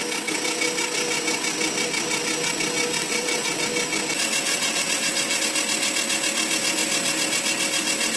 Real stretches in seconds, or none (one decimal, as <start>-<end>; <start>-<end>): 0.0-3.0; 3.6-4.5; 5.4-8.2